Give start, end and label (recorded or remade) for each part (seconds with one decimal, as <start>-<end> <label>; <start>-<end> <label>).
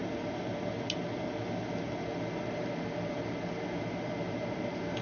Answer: 0.0-5.0 recorded